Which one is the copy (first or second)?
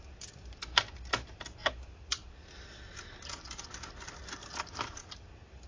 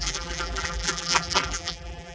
second